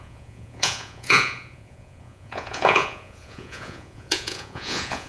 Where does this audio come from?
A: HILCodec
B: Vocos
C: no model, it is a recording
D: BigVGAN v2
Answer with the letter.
B